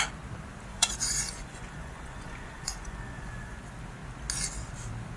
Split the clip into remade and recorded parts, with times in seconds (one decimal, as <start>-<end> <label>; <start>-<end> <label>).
0.0-0.7 recorded; 0.7-3.6 remade; 3.6-5.2 recorded